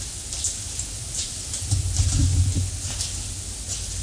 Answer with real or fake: real